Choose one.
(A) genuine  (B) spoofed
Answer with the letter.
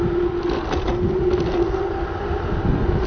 A